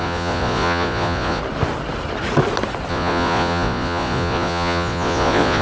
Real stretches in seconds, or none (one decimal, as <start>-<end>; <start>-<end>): 1.4-2.9